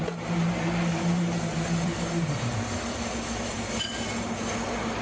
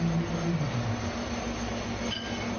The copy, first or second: first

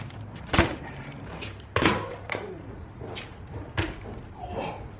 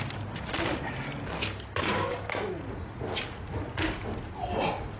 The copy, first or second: first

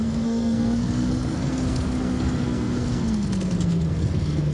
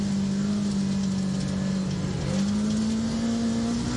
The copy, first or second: first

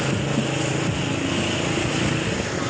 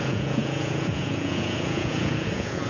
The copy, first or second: second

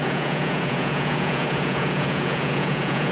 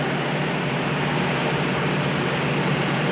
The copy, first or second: first